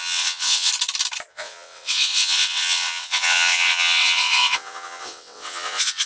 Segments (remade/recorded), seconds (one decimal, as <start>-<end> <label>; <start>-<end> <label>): 0.0-0.7 remade; 0.7-1.3 recorded; 1.3-6.1 remade